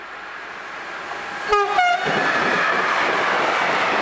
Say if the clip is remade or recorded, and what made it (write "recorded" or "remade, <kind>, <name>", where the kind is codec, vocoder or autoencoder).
recorded